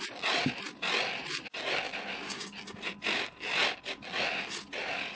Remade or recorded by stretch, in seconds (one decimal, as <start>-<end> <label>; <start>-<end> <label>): 0.0-5.2 recorded

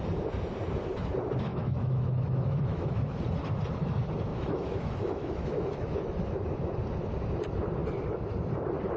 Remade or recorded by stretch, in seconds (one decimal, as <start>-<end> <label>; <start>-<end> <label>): 0.0-1.5 recorded; 1.5-3.2 remade; 3.2-4.3 recorded; 4.3-6.2 remade; 6.2-9.0 recorded

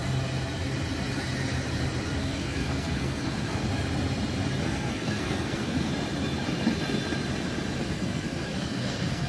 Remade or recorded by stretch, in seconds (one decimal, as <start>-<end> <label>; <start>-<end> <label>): 0.0-2.2 recorded; 2.2-3.7 remade; 3.7-4.6 recorded; 4.6-5.9 remade; 5.9-7.8 recorded; 7.8-9.3 remade

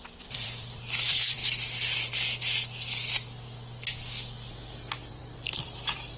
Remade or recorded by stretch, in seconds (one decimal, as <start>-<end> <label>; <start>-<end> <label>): 0.0-1.4 remade; 1.4-5.1 recorded; 5.1-6.2 remade